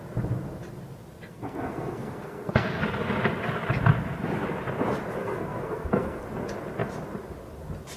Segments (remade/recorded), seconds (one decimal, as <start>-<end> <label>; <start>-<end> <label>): 0.0-1.3 recorded; 1.3-2.8 remade; 2.8-5.2 recorded; 5.2-6.2 remade; 6.2-8.0 recorded